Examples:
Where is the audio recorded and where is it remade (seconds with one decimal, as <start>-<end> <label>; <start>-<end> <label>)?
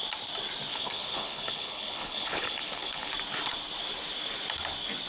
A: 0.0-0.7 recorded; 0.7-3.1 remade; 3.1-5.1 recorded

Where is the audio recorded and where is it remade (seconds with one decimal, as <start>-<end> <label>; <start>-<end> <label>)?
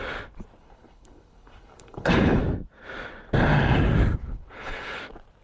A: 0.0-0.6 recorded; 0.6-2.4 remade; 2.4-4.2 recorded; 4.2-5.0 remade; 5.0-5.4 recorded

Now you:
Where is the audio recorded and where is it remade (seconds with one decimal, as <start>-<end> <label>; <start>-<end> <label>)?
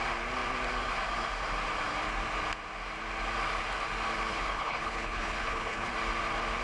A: 0.0-4.3 recorded; 4.3-5.9 remade; 5.9-6.6 recorded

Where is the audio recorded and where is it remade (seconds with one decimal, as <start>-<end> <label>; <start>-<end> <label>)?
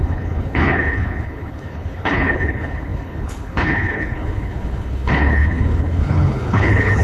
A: 0.0-7.0 remade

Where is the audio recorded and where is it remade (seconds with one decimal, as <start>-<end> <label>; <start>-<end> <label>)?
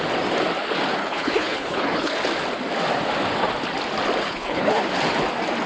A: 0.0-1.0 recorded; 1.0-2.2 remade; 2.2-4.2 recorded; 4.2-4.8 remade; 4.8-5.7 recorded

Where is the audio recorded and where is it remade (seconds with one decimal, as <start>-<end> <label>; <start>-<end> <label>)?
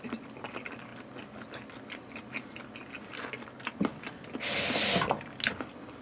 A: 0.0-6.0 recorded